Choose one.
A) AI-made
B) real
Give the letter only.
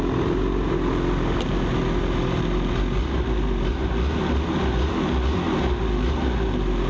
B